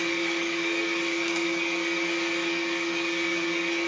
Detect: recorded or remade remade